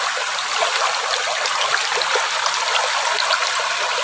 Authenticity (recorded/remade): recorded